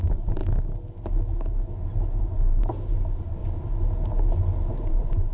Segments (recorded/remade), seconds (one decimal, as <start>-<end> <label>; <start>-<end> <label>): 0.0-0.4 remade; 0.4-2.2 recorded; 2.2-3.4 remade; 3.4-4.7 recorded; 4.7-5.3 remade